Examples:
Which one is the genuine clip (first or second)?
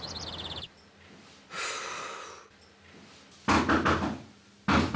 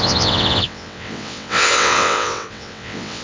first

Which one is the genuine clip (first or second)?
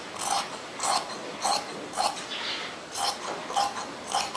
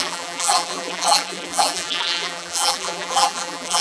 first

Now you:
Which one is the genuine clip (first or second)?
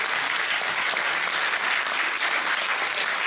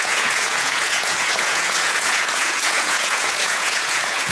first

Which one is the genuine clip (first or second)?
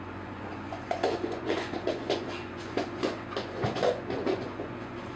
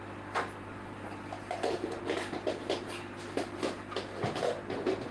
second